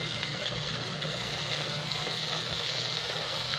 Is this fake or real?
fake